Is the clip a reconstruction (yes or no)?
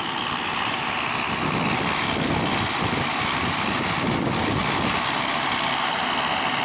no